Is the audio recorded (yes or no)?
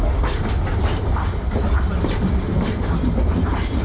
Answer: yes